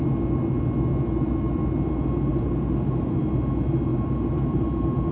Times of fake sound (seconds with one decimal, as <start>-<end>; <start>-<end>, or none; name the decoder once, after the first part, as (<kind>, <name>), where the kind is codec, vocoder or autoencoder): 2.3-3.1 (vocoder, BigVGAN v2); 3.9-5.1